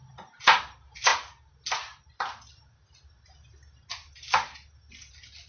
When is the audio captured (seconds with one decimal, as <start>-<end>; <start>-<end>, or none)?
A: 0.0-5.5